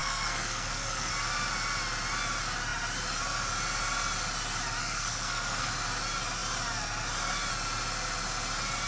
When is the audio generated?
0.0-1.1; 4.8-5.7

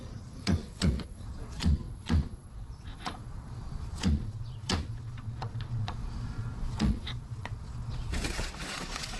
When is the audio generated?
0.0-9.2

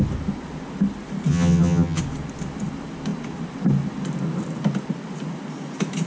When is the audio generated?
1.3-2.0

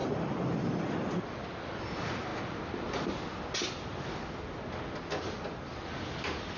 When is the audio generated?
none

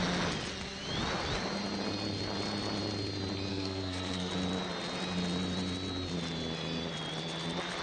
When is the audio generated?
3.5-4.3

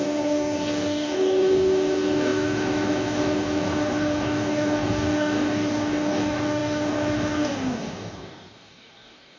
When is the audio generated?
0.0-9.4

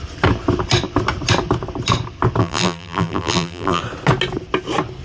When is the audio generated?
2.4-3.8